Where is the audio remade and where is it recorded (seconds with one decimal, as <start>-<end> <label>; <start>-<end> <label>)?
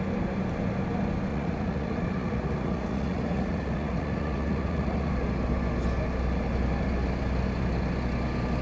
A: 0.0-1.3 recorded; 1.3-5.1 remade; 5.1-8.6 recorded